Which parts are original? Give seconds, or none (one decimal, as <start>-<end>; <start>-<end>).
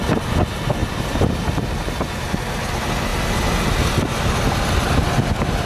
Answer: 0.0-0.8; 2.6-5.7